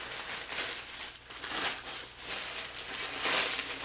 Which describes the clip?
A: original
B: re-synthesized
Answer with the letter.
A